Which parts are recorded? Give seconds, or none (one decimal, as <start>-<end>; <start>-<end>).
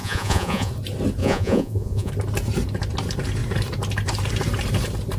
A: 0.7-1.2; 2.1-5.2